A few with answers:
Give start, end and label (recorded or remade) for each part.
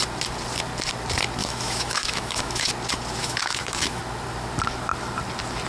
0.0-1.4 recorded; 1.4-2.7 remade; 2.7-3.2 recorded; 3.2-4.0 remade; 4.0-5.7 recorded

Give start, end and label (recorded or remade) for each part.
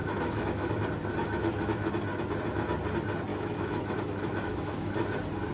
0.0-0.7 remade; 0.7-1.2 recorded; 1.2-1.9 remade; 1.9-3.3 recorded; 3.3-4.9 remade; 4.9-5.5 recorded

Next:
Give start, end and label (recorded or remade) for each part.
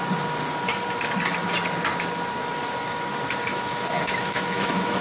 0.0-3.5 recorded; 3.5-5.0 remade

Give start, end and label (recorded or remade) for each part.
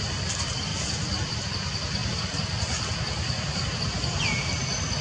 0.0-5.0 recorded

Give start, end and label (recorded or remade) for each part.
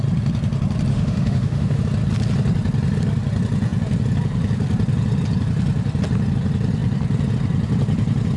0.0-0.9 recorded; 0.9-1.8 remade; 1.8-8.4 recorded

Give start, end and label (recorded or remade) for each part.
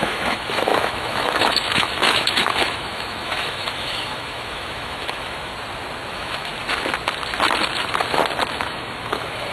0.0-5.5 remade; 5.5-6.1 recorded; 6.1-6.5 remade; 6.5-8.5 recorded; 8.5-9.5 remade